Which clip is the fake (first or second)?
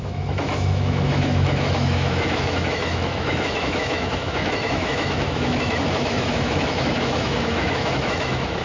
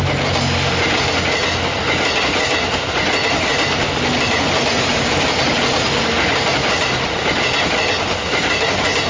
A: first